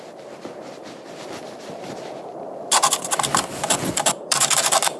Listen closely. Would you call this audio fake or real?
fake